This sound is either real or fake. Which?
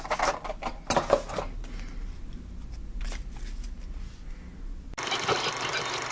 real